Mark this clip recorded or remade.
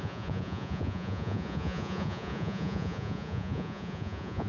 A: remade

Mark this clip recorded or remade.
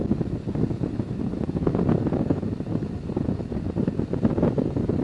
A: recorded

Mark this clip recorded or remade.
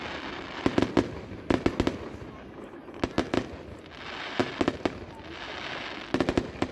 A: recorded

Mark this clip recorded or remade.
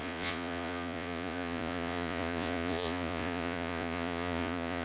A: remade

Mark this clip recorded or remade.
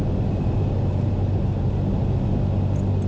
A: recorded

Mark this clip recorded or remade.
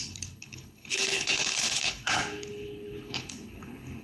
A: remade